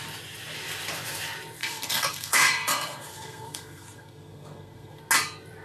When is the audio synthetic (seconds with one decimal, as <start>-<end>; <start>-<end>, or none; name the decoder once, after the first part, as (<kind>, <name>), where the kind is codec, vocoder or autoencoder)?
1.6-5.0 (codec, SNAC)